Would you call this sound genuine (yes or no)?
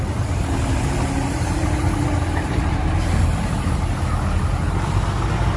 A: yes